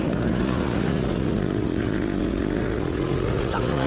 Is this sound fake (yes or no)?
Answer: yes